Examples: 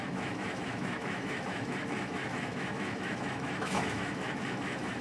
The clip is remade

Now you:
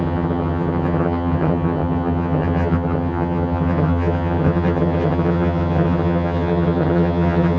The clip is remade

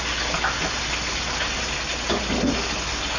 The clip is recorded